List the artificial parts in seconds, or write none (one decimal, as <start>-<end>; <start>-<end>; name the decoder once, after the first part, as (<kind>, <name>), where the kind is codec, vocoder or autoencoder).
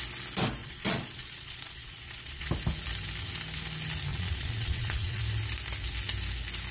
0.6-2.5 (vocoder, Vocos); 4.1-5.2